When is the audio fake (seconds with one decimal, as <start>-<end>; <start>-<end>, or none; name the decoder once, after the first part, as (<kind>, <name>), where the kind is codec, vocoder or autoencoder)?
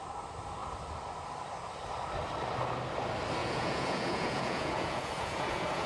3.4-5.9 (vocoder, Vocos)